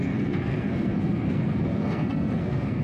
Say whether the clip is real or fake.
fake